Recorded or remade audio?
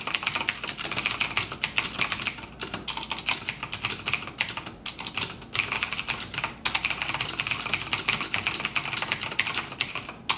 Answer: recorded